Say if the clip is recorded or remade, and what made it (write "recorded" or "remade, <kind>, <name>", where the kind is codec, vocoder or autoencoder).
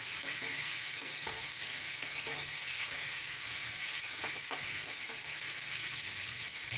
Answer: remade, codec, SNAC